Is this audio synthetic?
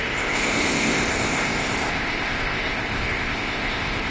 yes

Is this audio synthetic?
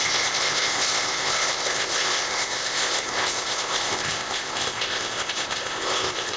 yes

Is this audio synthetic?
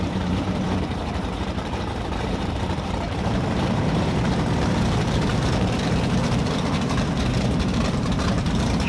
yes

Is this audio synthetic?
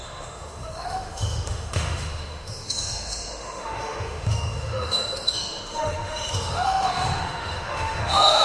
yes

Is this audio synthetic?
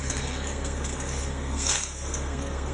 yes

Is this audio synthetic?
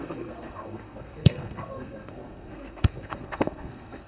yes